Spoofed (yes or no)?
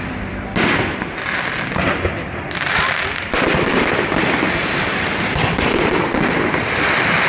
yes